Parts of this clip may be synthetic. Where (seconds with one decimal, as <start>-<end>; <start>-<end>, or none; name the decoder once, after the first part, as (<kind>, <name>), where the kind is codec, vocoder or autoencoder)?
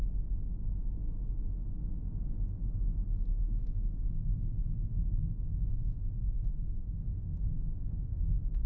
3.3-8.7 (autoencoder, DAC-VAE)